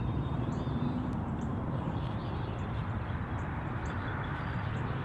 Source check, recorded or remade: remade